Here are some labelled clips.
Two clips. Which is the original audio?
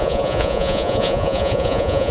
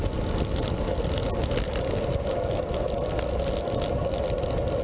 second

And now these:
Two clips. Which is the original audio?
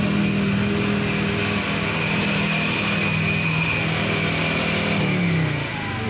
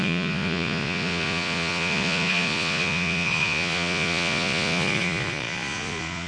first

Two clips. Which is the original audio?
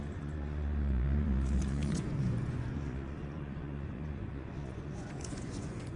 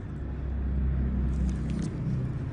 second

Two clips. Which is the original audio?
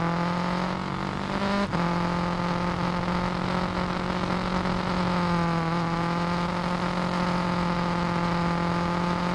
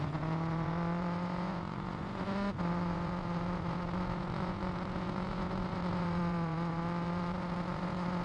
first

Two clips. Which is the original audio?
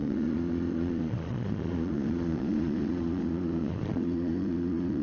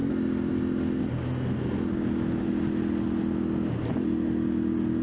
second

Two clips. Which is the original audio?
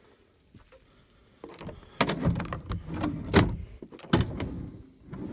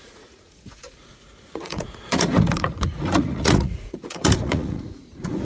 first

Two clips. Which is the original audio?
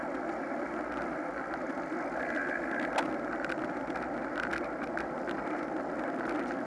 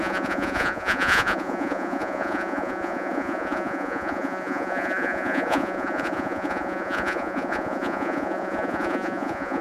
first